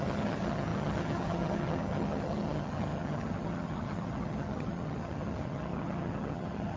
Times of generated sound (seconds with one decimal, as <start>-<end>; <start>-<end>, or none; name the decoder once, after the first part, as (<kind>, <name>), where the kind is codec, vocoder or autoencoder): 0.0-6.8 (vocoder, HiFi-GAN)